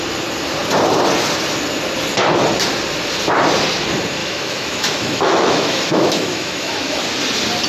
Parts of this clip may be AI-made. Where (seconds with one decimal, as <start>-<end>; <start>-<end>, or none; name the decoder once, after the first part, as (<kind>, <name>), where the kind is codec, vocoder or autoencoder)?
4.2-7.0 (autoencoder, DAC-VAE)